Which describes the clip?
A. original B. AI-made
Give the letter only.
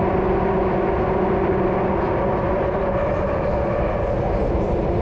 A